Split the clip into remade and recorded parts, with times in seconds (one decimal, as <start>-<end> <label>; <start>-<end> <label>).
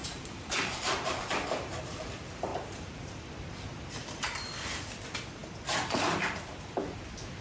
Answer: 0.0-1.5 remade; 1.5-2.5 recorded; 2.5-3.3 remade; 3.3-7.4 recorded